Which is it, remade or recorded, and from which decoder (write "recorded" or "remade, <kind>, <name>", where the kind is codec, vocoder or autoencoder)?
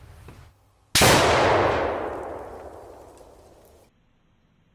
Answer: recorded